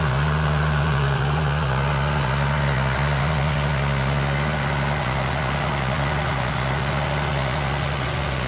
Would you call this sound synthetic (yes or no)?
yes